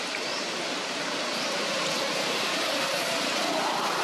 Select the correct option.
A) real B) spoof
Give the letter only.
A